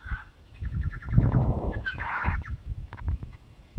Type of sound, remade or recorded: remade